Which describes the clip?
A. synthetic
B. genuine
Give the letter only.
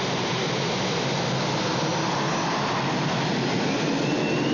B